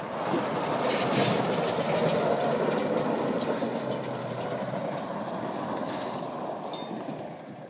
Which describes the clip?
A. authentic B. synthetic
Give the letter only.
A